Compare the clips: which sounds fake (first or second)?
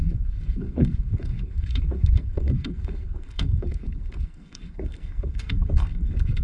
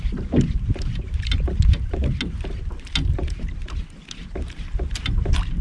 first